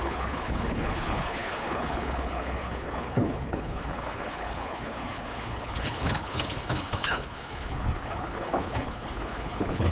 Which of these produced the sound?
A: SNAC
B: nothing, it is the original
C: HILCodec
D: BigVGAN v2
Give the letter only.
C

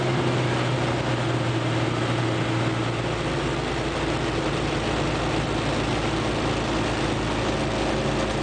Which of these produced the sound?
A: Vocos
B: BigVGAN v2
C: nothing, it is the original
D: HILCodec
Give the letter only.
C